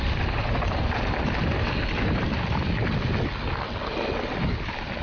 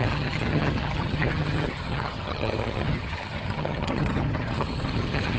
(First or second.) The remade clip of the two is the second